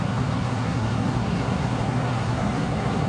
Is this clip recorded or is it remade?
remade